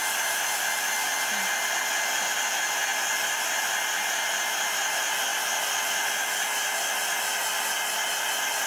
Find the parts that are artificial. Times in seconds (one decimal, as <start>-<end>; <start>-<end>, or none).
none